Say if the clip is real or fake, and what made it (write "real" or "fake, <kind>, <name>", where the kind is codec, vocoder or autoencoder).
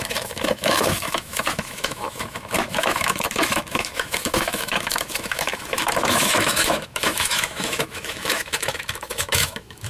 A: fake, autoencoder, DAC-VAE